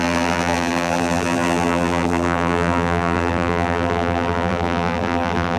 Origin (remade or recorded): remade